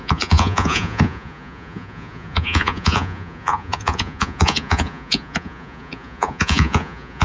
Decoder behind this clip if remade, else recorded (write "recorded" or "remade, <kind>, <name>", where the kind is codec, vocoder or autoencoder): remade, vocoder, Vocos